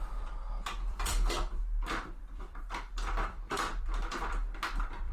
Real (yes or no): no